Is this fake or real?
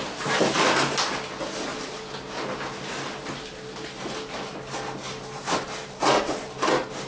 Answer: real